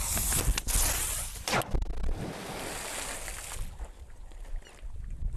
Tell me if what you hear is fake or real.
real